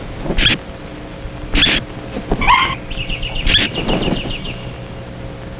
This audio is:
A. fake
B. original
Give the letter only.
B